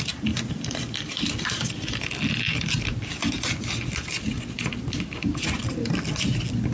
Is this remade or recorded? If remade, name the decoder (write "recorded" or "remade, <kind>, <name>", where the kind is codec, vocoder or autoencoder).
recorded